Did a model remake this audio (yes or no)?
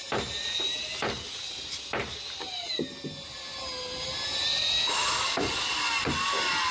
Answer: no